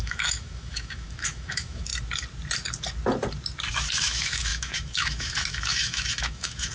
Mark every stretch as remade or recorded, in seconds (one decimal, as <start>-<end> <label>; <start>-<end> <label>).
0.0-1.9 remade; 1.9-3.7 recorded; 3.7-6.7 remade